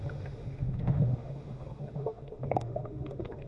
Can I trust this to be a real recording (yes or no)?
no